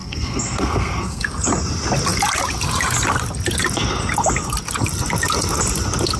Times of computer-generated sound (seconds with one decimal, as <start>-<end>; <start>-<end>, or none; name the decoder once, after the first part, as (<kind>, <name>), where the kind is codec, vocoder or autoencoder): 0.0-1.2 (codec, SNAC)

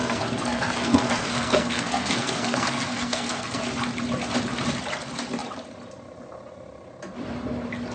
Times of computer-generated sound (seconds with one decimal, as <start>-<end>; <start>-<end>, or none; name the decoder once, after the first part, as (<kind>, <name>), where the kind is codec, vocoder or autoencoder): 0.0-3.6 (codec, SNAC)

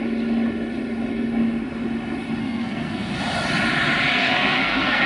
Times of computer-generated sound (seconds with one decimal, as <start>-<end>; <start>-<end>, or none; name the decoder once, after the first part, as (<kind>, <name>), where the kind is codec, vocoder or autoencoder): 2.4-3.2 (codec, SNAC); 4.1-5.1

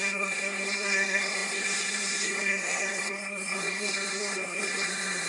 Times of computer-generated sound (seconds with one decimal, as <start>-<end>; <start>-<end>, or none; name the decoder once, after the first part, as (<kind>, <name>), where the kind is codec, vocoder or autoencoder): 0.0-5.3 (codec, SNAC)

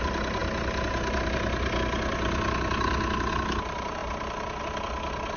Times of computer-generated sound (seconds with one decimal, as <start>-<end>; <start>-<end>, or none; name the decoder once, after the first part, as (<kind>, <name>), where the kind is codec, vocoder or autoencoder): none

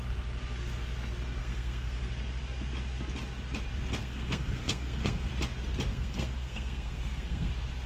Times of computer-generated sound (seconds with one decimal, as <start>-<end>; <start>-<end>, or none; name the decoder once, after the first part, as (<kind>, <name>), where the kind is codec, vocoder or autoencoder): 1.4-2.1 (codec, SNAC); 4.0-5.3; 5.9-7.5

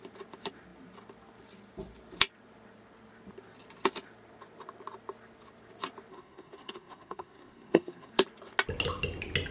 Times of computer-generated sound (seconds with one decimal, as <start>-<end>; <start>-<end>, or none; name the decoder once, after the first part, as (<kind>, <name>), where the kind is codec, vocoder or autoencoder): 6.1-8.1 (codec, SNAC)

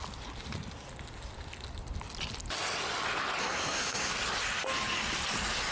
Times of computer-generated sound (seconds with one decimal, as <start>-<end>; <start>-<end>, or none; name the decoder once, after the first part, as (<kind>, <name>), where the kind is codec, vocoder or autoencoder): 3.4-4.1 (codec, SNAC)